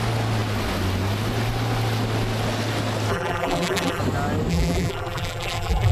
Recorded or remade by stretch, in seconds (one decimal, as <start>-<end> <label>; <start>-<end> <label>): 0.0-3.1 recorded; 3.1-4.0 remade; 4.0-4.5 recorded; 4.5-5.9 remade

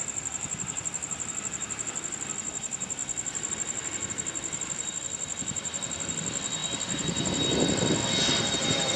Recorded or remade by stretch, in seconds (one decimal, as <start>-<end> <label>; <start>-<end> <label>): 0.0-6.6 remade; 6.6-8.5 recorded; 8.5-9.0 remade

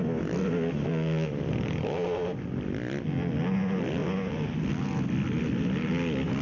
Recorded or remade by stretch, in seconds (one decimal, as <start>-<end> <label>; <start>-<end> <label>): 0.0-6.4 recorded